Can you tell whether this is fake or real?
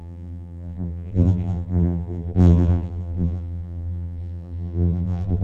fake